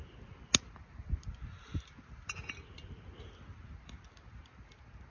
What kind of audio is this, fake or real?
real